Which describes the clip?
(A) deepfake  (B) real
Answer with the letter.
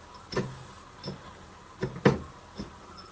B